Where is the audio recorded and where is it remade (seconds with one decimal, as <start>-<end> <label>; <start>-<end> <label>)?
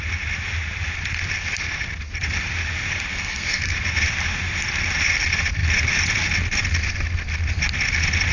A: 0.0-3.1 recorded; 3.1-3.7 remade; 3.7-8.3 recorded